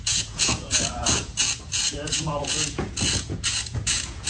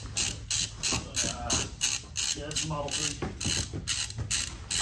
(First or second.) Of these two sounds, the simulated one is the first